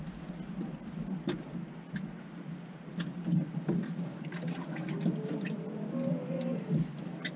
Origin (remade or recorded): recorded